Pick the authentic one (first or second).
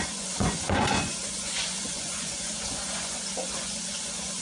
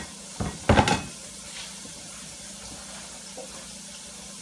second